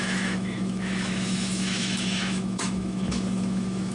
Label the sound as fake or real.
fake